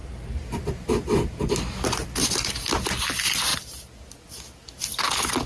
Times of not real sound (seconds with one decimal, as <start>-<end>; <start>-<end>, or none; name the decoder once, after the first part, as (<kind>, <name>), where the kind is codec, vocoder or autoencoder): none